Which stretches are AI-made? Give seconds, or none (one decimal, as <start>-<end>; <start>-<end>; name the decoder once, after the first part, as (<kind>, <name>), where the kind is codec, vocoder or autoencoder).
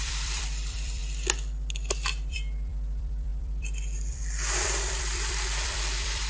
0.0-1.0 (vocoder, BigVGAN v2); 2.3-6.3